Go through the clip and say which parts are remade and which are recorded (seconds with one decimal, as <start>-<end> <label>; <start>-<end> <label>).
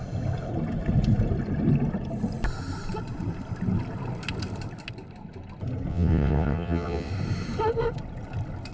0.0-5.9 recorded; 5.9-7.1 remade; 7.1-8.7 recorded